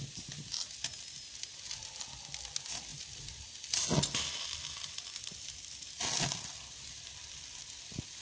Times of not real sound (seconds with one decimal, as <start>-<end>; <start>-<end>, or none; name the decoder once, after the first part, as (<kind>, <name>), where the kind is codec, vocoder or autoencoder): none